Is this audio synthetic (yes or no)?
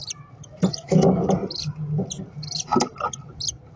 no